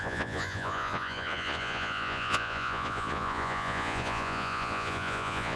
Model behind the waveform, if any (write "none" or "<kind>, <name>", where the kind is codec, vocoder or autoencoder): vocoder, Vocos